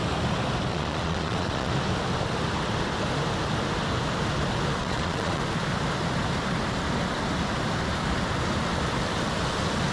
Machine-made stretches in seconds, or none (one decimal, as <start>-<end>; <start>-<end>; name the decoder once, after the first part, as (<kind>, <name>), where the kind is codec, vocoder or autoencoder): 0.7-1.7 (vocoder, Vocos); 4.8-5.4